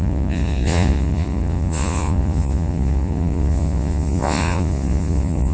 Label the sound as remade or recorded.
remade